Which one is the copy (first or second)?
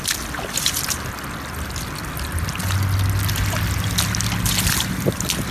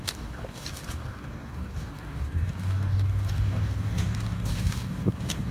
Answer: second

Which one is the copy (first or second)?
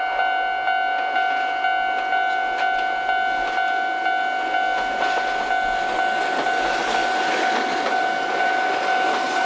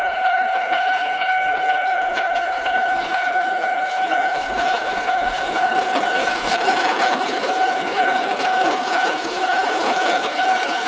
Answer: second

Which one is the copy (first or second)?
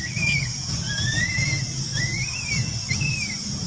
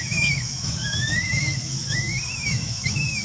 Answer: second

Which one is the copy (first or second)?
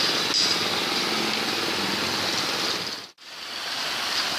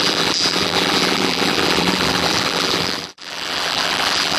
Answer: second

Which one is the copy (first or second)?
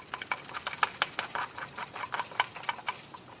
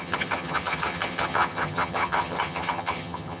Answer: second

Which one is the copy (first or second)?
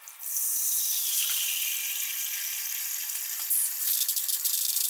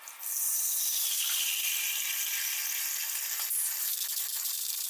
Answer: first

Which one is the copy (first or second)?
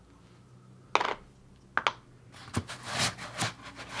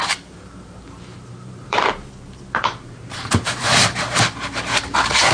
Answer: second